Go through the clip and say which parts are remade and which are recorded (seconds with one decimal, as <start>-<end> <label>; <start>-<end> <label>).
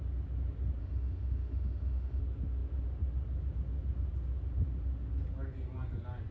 0.0-0.8 recorded; 0.8-2.2 remade; 2.2-6.3 recorded